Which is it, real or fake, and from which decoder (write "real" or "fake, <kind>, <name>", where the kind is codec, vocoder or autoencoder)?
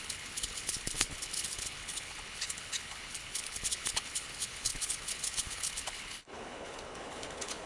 fake, codec, HILCodec